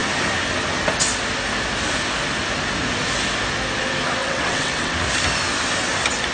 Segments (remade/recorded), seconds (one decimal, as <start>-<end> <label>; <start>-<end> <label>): 0.0-4.2 recorded; 4.2-4.9 remade; 4.9-6.3 recorded